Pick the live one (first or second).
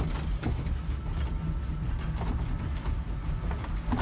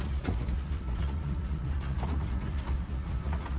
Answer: first